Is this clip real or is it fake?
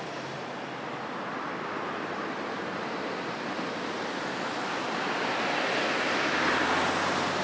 real